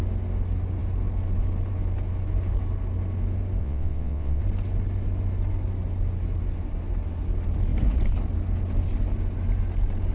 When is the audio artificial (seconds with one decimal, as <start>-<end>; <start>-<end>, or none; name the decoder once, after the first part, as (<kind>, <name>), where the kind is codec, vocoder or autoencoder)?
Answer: 3.6-4.4 (vocoder, WaveNeXt)